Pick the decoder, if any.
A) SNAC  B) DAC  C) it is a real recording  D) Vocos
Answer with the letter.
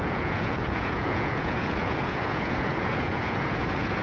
D